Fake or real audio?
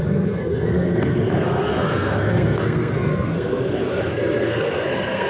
fake